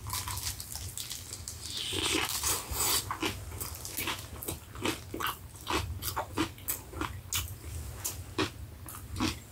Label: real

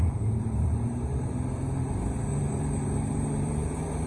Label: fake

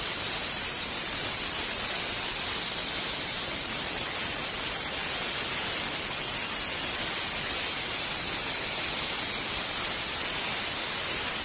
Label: real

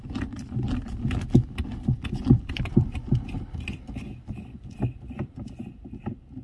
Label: fake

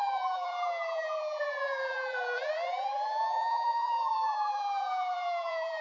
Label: fake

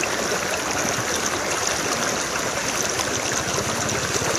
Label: real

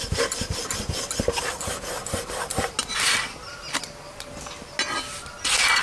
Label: real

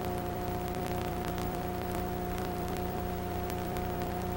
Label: fake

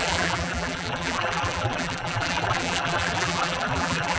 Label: fake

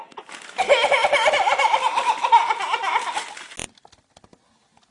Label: real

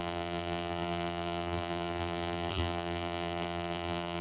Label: fake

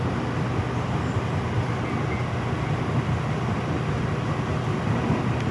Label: real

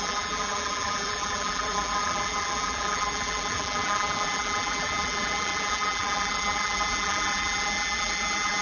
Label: fake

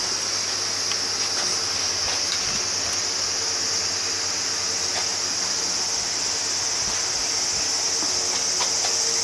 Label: real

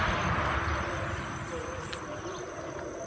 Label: real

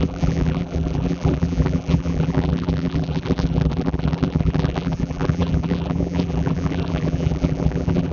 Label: fake